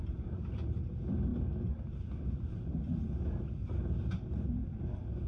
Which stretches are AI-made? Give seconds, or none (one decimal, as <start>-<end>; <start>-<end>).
0.0-0.9